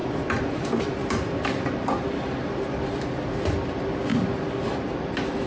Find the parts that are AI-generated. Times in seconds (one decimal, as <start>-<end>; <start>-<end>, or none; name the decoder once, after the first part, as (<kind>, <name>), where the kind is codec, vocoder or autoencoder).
0.0-3.0 (vocoder, BigVGAN v2); 4.1-4.7